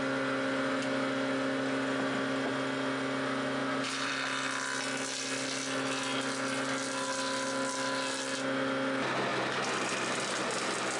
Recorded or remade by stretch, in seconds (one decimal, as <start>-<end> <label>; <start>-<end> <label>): 0.0-3.6 recorded; 3.6-4.1 remade; 4.1-11.0 recorded